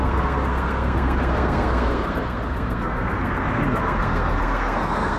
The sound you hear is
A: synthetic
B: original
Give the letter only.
A